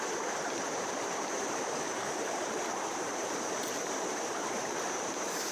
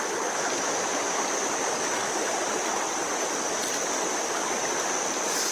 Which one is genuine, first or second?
second